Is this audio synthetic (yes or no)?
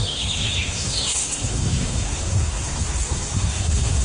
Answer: yes